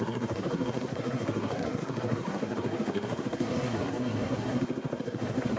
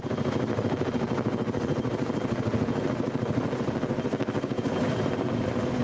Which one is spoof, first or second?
first